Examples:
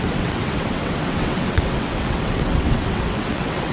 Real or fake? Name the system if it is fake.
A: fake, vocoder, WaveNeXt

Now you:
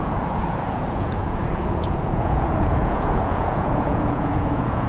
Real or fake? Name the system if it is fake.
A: fake, vocoder, Vocos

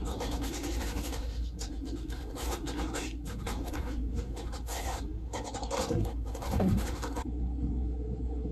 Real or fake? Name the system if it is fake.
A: fake, codec, SNAC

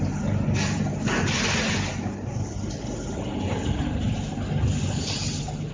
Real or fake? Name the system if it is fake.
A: real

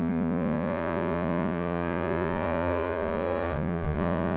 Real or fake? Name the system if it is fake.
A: fake, vocoder, Vocos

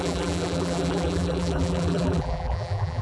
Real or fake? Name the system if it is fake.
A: fake, vocoder, BigVGAN v2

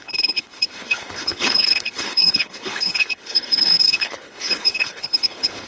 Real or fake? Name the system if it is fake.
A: fake, codec, HILCodec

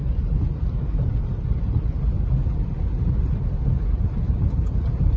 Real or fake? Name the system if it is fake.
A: real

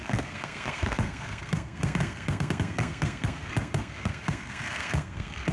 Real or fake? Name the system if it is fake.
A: fake, codec, SNAC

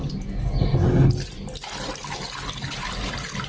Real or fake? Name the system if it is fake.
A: real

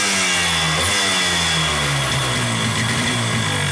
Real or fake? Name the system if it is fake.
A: real